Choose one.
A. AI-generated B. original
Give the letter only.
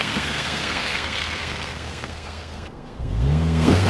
A